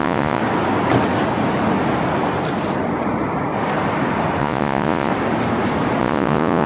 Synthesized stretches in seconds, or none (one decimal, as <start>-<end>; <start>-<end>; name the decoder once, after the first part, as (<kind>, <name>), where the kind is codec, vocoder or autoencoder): 0.0-0.4 (vocoder, Vocos); 4.4-5.1; 6.0-6.7